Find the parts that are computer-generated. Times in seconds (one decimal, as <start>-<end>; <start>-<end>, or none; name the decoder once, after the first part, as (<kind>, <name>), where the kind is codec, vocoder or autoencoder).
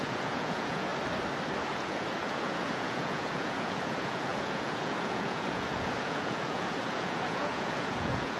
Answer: 0.0-0.9 (vocoder, Vocos); 1.6-8.4